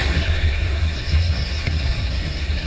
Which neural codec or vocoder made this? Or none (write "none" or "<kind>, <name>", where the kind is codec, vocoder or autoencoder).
codec, SNAC